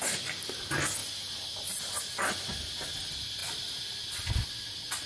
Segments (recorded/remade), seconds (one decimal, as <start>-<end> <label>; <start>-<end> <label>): 0.0-5.1 recorded